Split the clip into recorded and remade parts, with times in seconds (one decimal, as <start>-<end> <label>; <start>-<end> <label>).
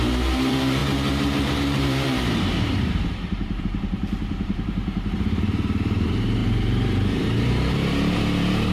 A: 0.0-4.8 remade; 4.8-5.4 recorded; 5.4-8.7 remade